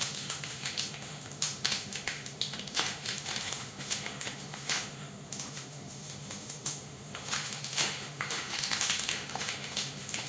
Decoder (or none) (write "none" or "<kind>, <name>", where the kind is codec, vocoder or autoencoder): autoencoder, DAC-VAE